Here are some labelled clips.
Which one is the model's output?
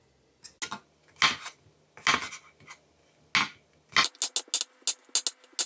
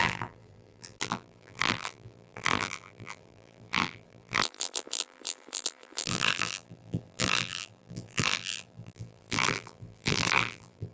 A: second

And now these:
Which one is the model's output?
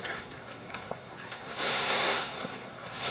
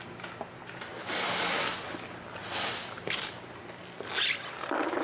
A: first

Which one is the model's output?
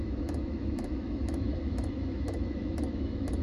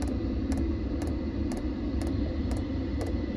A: first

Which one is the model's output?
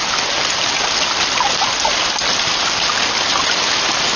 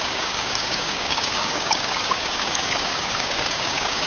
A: second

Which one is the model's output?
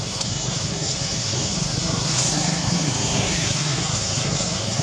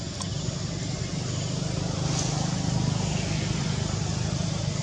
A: first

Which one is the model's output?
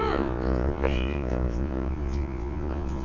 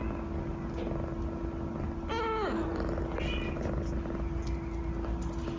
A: first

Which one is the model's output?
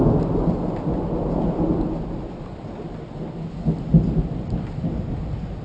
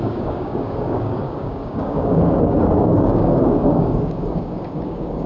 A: second